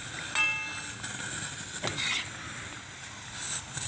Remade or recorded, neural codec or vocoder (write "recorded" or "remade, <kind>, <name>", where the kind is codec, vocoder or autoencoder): recorded